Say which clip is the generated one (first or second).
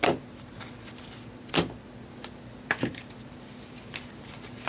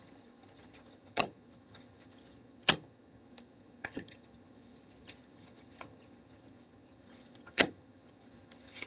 second